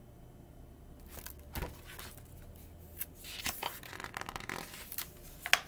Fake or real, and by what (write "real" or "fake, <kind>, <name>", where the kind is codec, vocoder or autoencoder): real